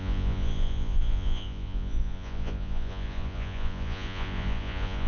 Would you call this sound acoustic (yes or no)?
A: no